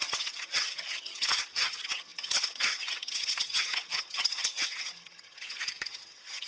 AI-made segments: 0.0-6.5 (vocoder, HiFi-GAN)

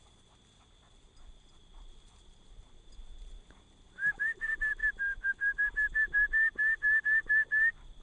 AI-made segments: none